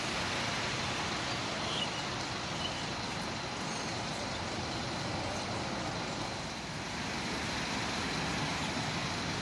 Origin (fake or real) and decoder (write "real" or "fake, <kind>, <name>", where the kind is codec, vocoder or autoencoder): real